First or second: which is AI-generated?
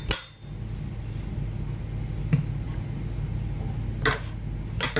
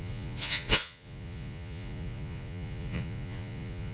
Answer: second